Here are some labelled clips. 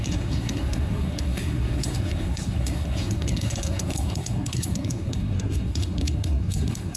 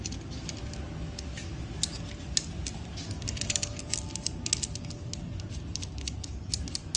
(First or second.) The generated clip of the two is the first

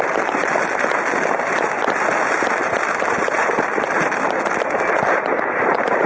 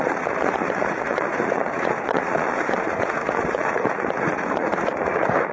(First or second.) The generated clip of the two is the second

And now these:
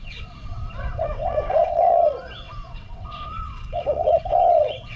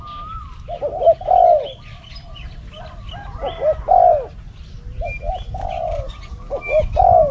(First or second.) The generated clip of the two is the first